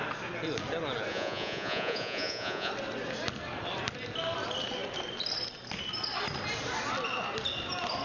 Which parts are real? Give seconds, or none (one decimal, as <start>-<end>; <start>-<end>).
0.0-1.1; 2.7-8.0